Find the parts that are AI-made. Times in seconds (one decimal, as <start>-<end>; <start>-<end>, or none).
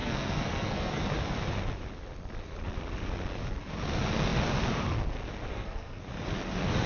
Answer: 0.0-1.0; 5.5-6.0